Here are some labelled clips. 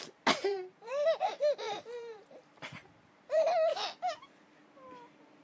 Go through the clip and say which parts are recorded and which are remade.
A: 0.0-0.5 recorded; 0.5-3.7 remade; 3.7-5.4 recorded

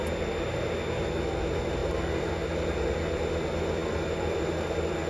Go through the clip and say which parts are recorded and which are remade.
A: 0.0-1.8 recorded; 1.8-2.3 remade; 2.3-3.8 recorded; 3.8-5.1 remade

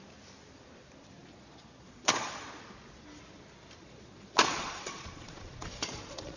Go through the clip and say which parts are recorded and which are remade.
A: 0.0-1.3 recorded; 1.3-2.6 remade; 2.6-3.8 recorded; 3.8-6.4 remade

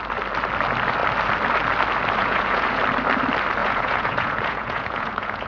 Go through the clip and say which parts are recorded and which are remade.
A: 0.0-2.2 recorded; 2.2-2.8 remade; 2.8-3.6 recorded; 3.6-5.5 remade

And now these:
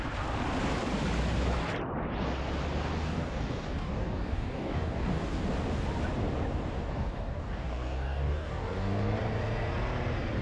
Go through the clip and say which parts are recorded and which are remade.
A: 0.0-3.0 recorded; 3.0-5.4 remade; 5.4-6.9 recorded; 6.9-9.2 remade; 9.2-10.4 recorded

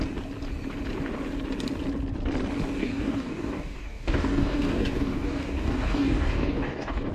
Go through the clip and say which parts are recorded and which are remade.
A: 0.0-2.8 recorded; 2.8-7.1 remade

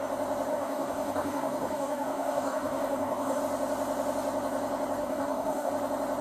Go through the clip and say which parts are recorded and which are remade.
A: 0.0-0.5 recorded; 0.5-3.4 remade; 3.4-5.0 recorded; 5.0-5.7 remade; 5.7-6.2 recorded

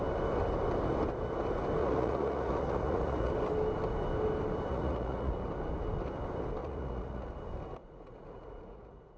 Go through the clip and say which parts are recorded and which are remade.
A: 0.0-1.8 recorded; 1.8-3.3 remade; 3.3-4.7 recorded; 4.7-5.3 remade; 5.3-6.6 recorded; 6.6-7.3 remade; 7.3-7.8 recorded; 7.8-9.2 remade